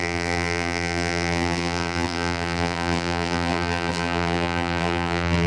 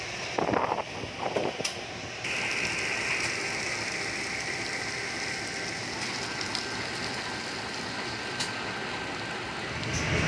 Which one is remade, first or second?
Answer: first